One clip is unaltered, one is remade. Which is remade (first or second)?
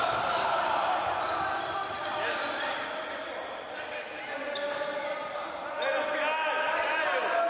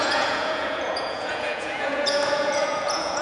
second